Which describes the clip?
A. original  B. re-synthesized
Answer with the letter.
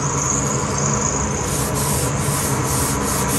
A